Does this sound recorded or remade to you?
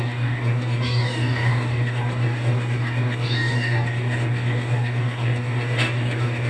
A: remade